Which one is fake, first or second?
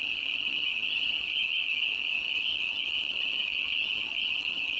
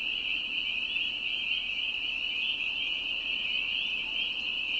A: first